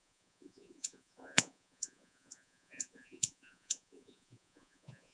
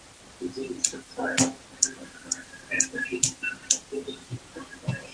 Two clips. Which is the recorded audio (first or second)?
second